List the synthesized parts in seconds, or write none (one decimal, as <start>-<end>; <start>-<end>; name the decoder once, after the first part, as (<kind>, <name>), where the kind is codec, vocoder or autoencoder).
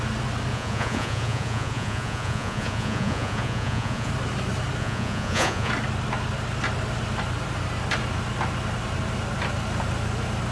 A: 0.5-4.1 (vocoder, Vocos); 4.8-5.7